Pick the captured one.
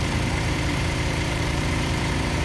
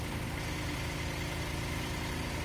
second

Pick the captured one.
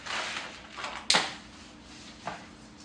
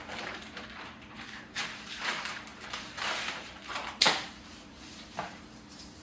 first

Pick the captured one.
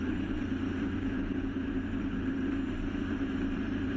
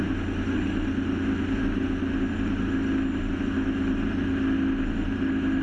second